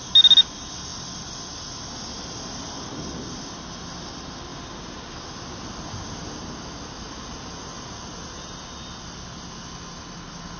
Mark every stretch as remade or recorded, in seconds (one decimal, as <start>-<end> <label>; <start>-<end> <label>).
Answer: 0.0-10.6 recorded

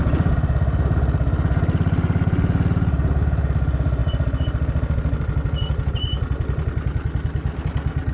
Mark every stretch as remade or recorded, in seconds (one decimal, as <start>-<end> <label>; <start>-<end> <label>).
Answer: 0.0-8.1 recorded

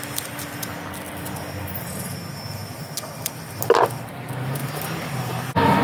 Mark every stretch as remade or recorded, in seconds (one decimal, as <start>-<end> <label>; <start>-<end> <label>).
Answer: 0.0-5.8 recorded

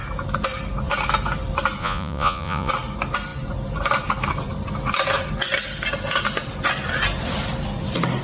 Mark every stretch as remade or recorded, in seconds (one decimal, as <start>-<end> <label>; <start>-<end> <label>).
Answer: 0.0-1.8 recorded; 1.8-2.7 remade; 2.7-8.2 recorded

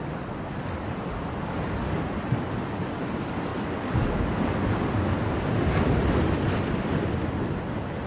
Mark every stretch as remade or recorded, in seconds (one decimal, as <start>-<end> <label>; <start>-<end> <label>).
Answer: 0.0-8.1 recorded